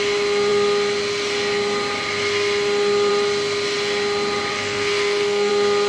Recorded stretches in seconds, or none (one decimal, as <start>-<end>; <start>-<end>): 0.0-4.5; 5.5-5.9